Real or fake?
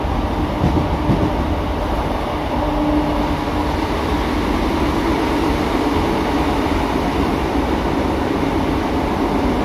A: real